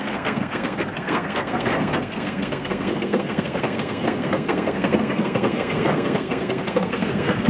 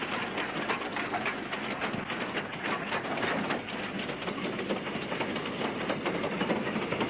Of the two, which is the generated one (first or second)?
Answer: first